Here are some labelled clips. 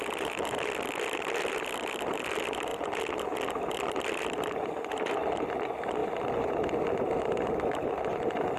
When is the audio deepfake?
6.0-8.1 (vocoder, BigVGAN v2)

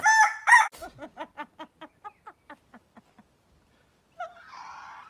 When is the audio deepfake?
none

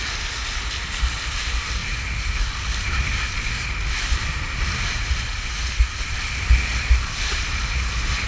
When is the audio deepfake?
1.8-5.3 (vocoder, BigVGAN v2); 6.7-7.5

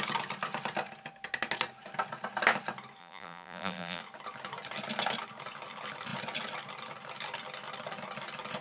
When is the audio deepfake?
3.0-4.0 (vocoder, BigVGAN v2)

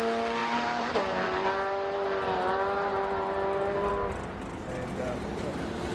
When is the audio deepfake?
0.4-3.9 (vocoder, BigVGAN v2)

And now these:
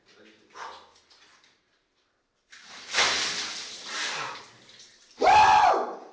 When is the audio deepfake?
3.5-4.3 (vocoder, BigVGAN v2)

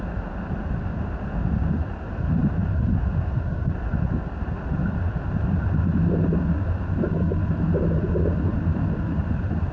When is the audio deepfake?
4.8-6.1 (vocoder, BigVGAN v2); 8.5-9.7

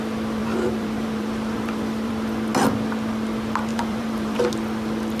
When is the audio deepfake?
0.4-2.1 (vocoder, BigVGAN v2); 3.7-4.4